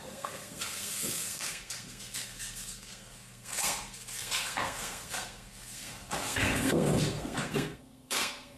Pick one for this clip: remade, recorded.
remade